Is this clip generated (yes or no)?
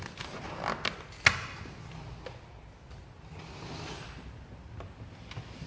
no